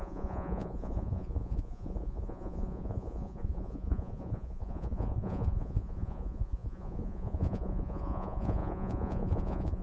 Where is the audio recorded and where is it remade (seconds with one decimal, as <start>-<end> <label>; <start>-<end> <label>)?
0.0-9.8 remade